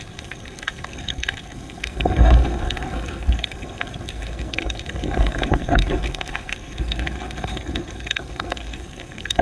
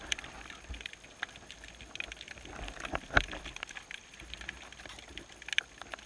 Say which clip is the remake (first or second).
first